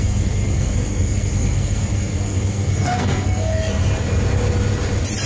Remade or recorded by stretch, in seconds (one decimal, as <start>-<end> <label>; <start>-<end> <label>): 0.0-3.7 remade; 3.7-5.3 recorded